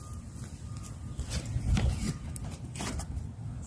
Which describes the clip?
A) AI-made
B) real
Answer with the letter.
B